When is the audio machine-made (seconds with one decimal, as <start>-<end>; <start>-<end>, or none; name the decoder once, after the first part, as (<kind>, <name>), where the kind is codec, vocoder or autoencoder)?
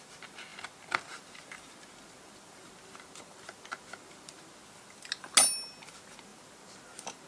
none